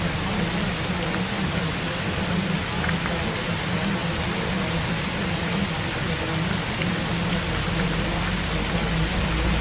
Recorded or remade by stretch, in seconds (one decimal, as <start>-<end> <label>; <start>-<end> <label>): 0.0-9.6 recorded